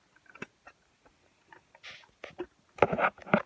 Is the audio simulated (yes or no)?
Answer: no